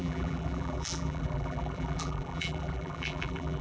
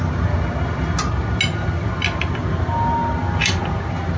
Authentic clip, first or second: second